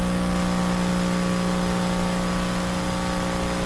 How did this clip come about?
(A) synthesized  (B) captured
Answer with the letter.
B